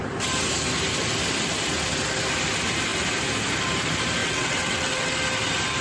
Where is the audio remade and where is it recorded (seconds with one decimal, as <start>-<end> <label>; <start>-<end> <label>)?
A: 0.0-4.2 recorded; 4.2-5.1 remade; 5.1-5.8 recorded